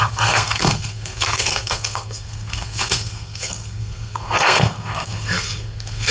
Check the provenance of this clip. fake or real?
fake